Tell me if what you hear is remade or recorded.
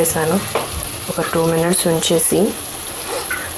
remade